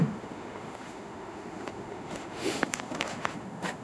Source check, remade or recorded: remade